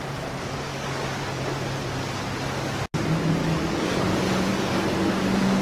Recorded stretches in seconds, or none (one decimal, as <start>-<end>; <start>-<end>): 0.0-0.7; 1.3-3.4; 4.1-4.5